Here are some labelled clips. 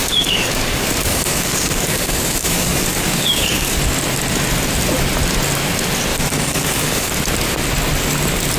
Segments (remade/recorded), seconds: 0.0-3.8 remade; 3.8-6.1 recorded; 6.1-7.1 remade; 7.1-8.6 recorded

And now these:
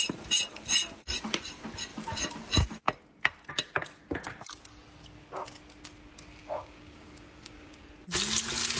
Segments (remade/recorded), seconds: 0.0-6.4 recorded; 6.4-7.8 remade; 7.8-8.8 recorded

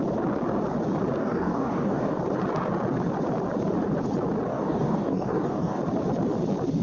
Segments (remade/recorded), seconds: 0.0-1.2 recorded; 1.2-2.2 remade; 2.2-4.5 recorded; 4.5-5.8 remade; 5.8-6.8 recorded

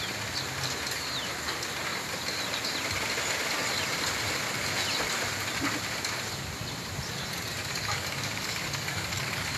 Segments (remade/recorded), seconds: 0.0-7.6 recorded; 7.6-9.6 remade

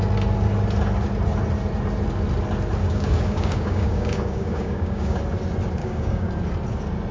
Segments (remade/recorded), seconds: 0.0-2.8 recorded; 2.8-5.2 remade; 5.2-5.8 recorded; 5.8-6.3 remade; 6.3-7.1 recorded

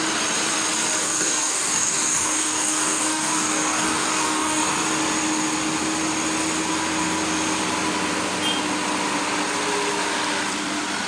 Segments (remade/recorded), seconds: 0.0-1.0 recorded; 1.0-4.7 remade; 4.7-11.1 recorded